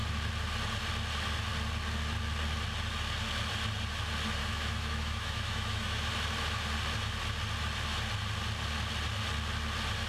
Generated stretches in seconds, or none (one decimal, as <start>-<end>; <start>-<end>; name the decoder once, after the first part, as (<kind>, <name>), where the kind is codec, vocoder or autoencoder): 4.4-6.1 (autoencoder, DAC-VAE)